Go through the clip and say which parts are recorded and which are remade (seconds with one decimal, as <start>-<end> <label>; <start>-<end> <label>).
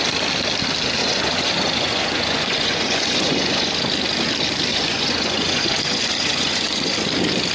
0.0-1.0 recorded; 1.0-3.7 remade; 3.7-4.7 recorded; 4.7-6.9 remade; 6.9-7.5 recorded